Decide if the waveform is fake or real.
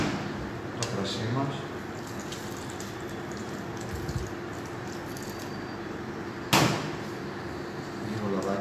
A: real